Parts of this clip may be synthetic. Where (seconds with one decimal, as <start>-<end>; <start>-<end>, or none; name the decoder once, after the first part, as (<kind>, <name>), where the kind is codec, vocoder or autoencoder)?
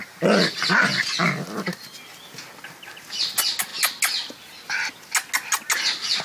none